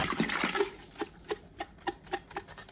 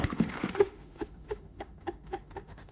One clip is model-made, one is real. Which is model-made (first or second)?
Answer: second